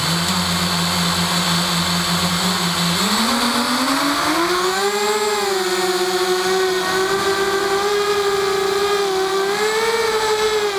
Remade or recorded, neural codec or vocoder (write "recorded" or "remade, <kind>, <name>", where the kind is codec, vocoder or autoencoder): recorded